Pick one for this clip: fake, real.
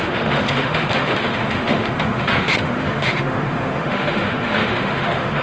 fake